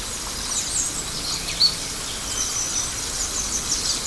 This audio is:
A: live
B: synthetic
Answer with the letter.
A